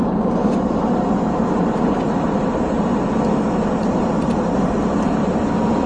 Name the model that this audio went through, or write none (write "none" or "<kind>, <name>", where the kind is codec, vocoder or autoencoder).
none